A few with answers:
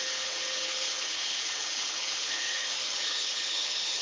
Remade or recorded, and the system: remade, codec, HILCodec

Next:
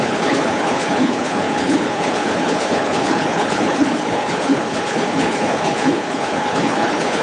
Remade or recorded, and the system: remade, codec, HILCodec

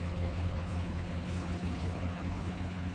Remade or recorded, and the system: remade, codec, HILCodec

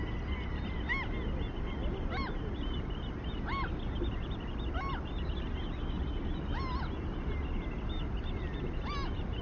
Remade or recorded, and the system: recorded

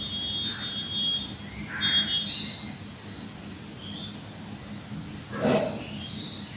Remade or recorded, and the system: recorded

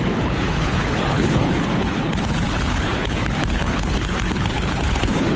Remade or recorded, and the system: remade, codec, HILCodec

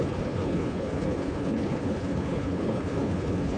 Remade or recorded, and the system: remade, codec, HILCodec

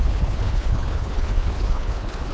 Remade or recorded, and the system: remade, codec, HILCodec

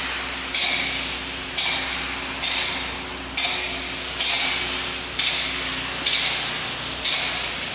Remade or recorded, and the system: recorded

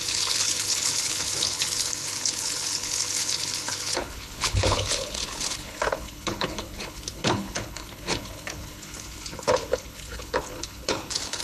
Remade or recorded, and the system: remade, codec, HILCodec